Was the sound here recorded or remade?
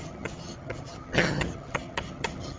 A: remade